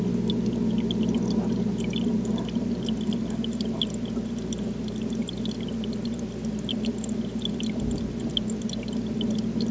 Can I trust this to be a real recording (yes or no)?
yes